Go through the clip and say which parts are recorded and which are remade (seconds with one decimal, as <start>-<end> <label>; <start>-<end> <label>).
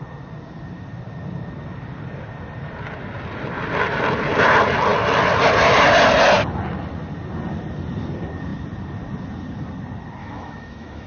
0.0-10.2 recorded; 10.2-11.1 remade